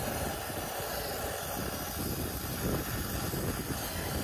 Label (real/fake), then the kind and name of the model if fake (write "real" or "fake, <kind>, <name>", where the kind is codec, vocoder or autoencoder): real